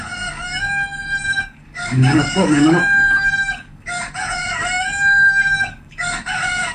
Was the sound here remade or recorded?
remade